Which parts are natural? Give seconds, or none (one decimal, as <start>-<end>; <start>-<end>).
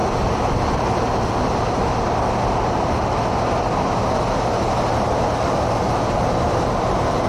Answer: 0.0-7.3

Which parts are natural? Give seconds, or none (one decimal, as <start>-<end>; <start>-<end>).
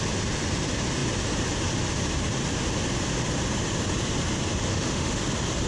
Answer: 0.0-4.7; 5.2-5.7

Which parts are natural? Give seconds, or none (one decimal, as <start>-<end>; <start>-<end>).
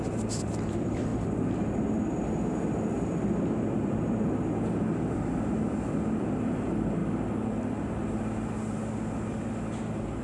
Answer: 1.1-5.1; 7.0-10.2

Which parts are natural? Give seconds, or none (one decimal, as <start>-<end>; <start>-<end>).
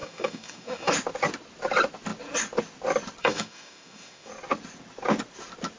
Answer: 0.9-3.2; 4.3-5.8